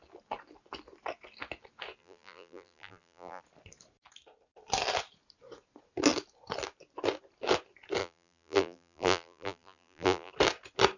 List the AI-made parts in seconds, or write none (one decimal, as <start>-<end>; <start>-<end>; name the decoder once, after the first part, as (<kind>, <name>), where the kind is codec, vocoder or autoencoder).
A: 2.0-3.4 (vocoder, BigVGAN v2); 8.0-10.3